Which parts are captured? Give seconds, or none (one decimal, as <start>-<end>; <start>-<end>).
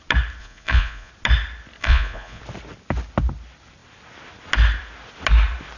0.0-0.4; 1.1-1.8; 2.4-5.8